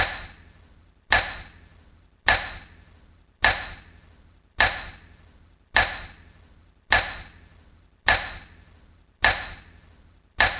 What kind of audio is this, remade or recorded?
recorded